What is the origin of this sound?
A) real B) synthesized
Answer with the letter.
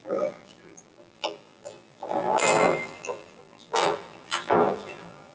B